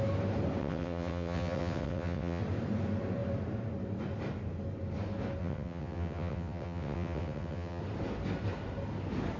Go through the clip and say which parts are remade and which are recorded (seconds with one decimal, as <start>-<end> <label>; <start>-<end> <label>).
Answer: 0.0-0.6 recorded; 0.6-2.4 remade; 2.4-5.4 recorded; 5.4-7.8 remade; 7.8-9.4 recorded